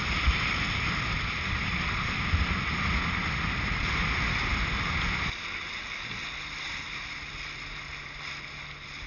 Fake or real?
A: real